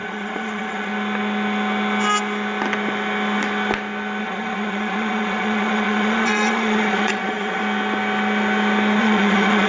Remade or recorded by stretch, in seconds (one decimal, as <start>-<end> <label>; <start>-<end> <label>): 0.0-0.9 remade; 0.9-4.2 recorded; 4.2-7.6 remade; 7.6-9.0 recorded; 9.0-9.7 remade